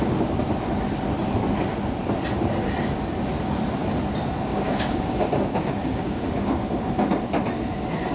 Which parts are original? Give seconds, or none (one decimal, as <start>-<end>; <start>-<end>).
0.0-4.5; 6.8-8.1